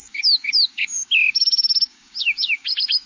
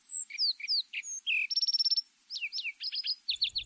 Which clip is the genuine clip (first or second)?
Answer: second